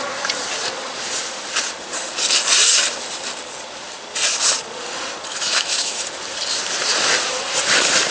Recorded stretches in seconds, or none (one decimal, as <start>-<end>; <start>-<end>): 0.0-5.3; 6.0-8.1